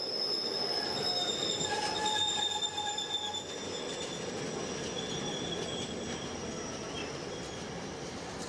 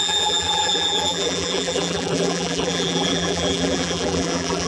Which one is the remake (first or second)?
second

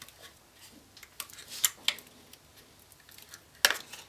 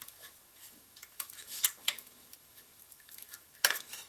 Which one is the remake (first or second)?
second